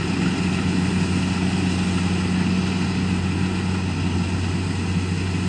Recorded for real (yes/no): yes